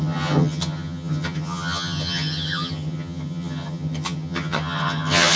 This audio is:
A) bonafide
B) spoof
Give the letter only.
B